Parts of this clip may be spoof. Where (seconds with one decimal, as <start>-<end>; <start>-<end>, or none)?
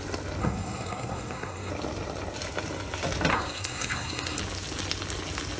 0.4-1.7; 3.3-4.4